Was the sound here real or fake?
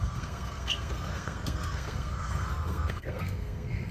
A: fake